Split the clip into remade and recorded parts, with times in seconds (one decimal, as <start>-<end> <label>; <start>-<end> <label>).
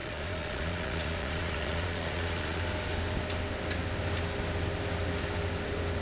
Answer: 0.0-2.6 remade; 2.6-6.0 recorded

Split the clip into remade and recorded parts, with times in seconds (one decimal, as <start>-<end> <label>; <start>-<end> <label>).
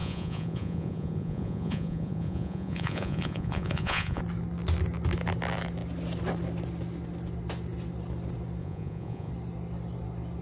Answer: 0.0-4.2 remade; 4.2-8.6 recorded; 8.6-9.3 remade; 9.3-10.4 recorded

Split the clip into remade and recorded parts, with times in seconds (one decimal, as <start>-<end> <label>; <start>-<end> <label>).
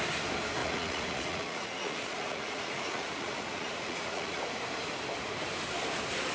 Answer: 0.0-0.6 recorded; 0.6-4.4 remade; 4.4-6.3 recorded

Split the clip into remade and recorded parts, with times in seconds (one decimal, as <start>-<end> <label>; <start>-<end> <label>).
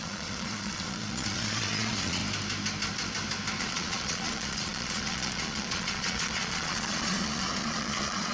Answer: 0.0-2.2 remade; 2.2-3.6 recorded; 3.6-8.3 remade